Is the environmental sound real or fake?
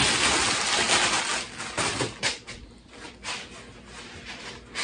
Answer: real